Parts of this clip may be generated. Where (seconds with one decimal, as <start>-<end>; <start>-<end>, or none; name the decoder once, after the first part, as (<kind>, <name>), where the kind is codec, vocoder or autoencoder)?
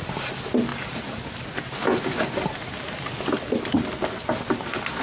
none